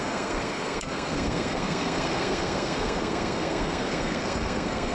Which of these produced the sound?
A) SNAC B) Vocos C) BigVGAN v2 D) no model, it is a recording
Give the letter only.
A